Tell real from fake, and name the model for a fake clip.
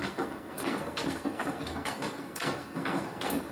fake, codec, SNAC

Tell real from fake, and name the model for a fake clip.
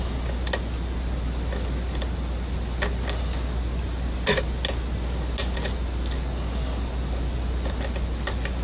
real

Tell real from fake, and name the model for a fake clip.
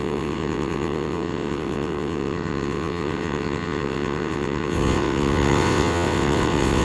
fake, vocoder, WaveNeXt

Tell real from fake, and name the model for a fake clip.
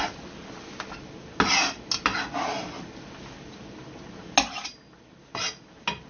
real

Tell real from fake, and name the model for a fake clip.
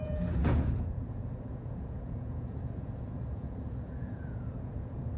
fake, vocoder, Vocos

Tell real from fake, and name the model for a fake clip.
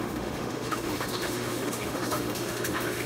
fake, autoencoder, DAC-VAE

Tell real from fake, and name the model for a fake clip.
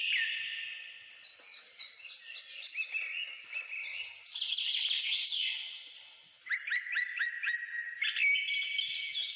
real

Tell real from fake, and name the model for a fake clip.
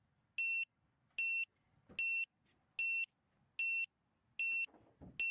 real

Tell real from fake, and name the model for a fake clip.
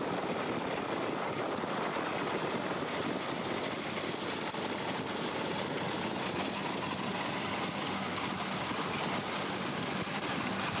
real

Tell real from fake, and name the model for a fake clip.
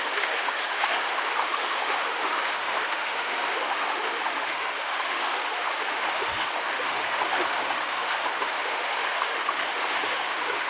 fake, autoencoder, DAC-VAE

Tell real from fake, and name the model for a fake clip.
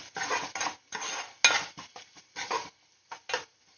real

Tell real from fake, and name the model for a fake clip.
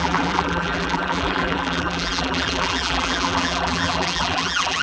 fake, vocoder, BigVGAN v2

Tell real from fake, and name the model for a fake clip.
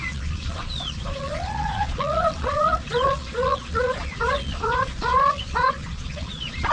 fake, vocoder, Vocos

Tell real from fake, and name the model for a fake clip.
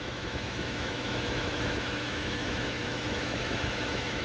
fake, autoencoder, DAC-VAE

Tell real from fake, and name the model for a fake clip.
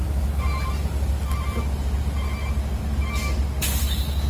real